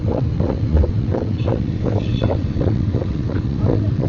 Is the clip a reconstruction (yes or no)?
yes